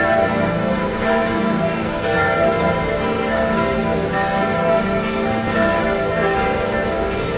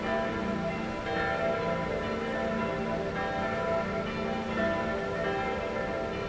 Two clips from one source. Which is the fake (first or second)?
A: first